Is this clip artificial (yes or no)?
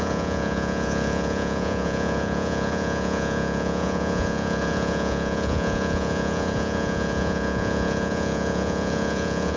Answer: yes